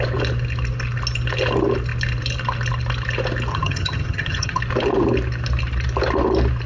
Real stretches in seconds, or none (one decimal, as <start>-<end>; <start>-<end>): 0.0-3.5; 4.6-6.7